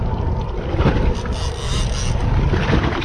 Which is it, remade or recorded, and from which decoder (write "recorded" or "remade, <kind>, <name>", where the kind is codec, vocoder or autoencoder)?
recorded